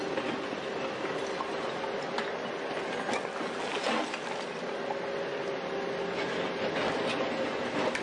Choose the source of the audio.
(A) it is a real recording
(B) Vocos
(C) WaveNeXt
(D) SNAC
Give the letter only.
A